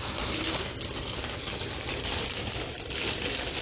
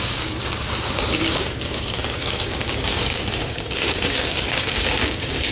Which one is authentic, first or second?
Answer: first